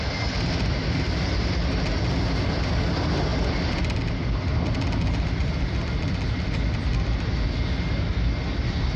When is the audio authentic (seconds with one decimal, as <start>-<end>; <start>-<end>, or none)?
0.0-3.3; 7.3-9.0